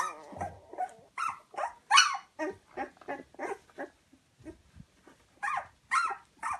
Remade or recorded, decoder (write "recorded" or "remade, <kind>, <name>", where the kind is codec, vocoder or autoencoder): recorded